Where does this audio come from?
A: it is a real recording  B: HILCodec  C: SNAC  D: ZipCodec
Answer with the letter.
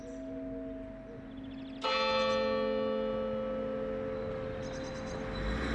A